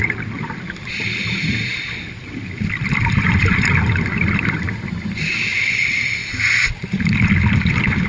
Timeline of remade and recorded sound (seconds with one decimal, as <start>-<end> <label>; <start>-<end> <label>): 0.0-6.2 remade; 6.2-7.0 recorded; 7.0-8.1 remade